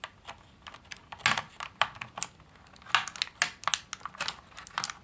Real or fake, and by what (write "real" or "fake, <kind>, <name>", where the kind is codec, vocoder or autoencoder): real